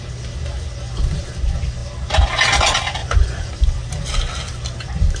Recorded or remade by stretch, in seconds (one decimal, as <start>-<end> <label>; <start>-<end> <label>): 0.0-3.0 recorded; 3.0-3.5 remade; 3.5-5.2 recorded